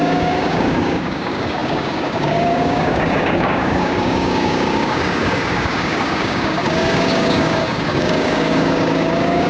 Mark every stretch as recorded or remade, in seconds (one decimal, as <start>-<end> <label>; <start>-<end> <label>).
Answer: 0.0-9.5 remade